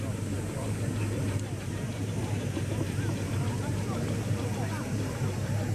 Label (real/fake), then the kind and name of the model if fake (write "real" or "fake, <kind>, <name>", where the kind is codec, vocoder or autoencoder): fake, vocoder, BigVGAN v2